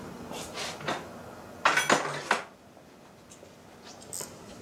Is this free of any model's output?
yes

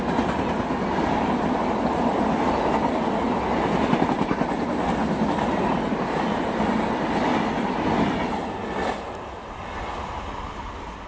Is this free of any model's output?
yes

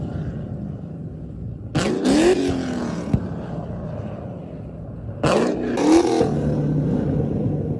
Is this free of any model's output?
yes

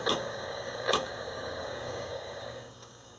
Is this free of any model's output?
no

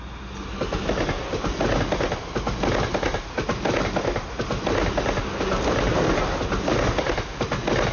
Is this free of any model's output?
yes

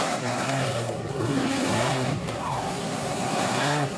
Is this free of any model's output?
no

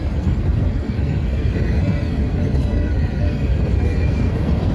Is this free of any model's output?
no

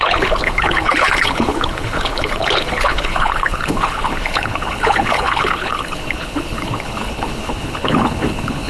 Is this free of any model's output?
no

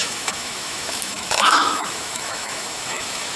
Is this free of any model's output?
no